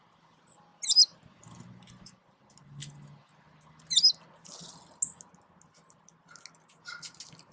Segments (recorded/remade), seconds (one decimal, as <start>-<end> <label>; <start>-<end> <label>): 0.0-7.5 recorded